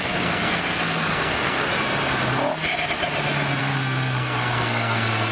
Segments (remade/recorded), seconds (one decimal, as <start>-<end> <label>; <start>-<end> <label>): 0.0-1.7 remade; 1.7-3.6 recorded; 3.6-5.3 remade